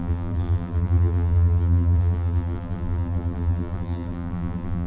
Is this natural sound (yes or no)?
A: no